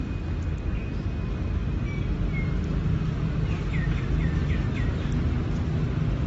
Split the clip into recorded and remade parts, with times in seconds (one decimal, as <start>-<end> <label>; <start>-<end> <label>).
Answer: 0.0-4.4 recorded; 4.4-5.2 remade; 5.2-6.3 recorded